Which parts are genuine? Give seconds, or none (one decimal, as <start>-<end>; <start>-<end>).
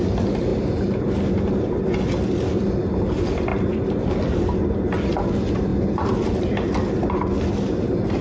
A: 0.0-0.5; 1.6-3.5; 5.2-5.7; 7.0-8.2